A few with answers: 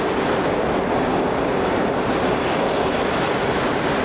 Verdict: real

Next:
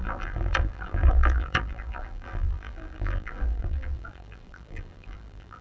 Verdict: fake